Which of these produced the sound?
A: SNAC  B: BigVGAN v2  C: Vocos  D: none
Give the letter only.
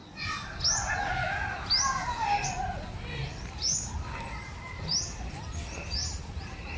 D